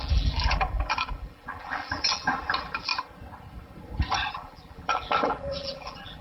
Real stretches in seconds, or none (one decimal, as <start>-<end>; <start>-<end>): 2.9-4.3